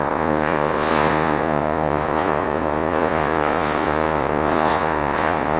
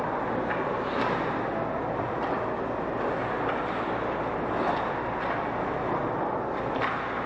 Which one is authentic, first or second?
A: second